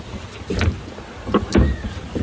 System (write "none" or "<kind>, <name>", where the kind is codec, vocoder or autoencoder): none